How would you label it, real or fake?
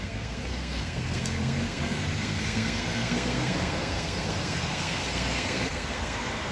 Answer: fake